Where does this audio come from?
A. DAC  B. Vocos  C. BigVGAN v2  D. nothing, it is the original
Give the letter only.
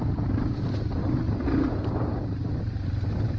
C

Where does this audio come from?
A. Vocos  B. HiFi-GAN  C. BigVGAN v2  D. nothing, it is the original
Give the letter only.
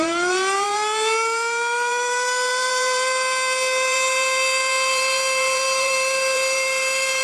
C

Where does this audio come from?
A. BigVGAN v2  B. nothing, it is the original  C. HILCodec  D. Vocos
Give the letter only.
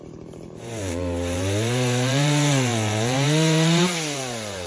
A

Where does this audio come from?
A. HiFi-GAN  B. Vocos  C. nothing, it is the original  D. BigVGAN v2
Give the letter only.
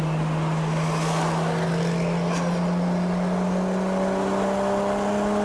C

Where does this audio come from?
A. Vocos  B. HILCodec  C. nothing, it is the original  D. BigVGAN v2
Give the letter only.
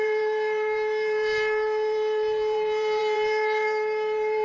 D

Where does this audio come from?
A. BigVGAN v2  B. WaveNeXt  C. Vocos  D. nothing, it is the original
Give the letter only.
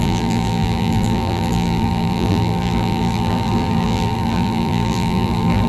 A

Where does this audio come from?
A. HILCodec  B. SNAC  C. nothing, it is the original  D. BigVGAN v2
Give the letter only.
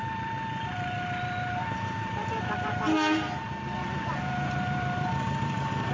D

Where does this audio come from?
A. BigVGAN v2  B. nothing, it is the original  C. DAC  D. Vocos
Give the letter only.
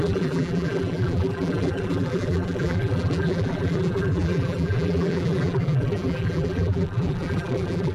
A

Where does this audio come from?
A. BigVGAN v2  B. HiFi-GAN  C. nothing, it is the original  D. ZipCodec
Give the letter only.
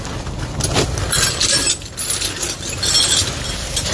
C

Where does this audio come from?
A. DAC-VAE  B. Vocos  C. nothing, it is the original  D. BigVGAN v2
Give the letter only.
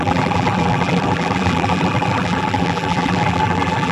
D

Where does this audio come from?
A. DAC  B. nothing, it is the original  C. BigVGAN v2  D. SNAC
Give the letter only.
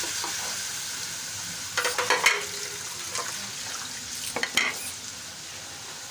B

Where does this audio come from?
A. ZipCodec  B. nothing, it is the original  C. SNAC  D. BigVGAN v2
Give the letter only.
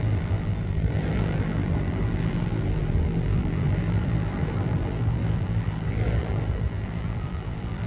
D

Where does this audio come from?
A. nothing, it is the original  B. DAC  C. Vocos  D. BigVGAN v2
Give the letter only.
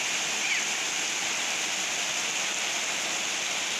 A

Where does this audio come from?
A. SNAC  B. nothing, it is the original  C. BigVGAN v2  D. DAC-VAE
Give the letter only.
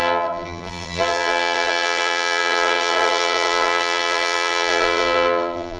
C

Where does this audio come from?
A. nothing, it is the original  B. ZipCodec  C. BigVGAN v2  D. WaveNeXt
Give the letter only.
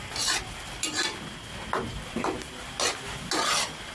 A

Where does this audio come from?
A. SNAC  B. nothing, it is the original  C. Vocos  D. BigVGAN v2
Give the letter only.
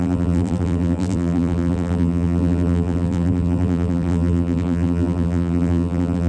D